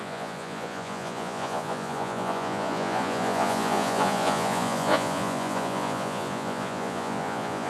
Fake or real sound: fake